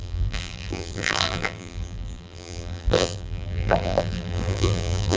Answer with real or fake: fake